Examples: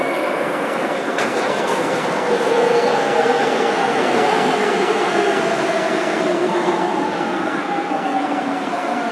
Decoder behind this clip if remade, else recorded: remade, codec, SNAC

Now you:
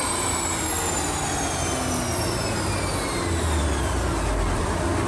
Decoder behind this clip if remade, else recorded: recorded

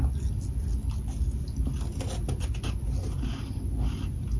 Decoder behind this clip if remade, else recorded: recorded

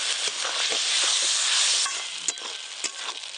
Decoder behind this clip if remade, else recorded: recorded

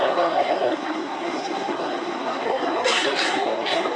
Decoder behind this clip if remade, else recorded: remade, codec, SNAC